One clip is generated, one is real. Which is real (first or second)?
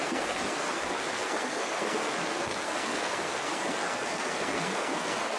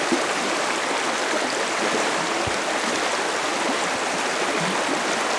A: second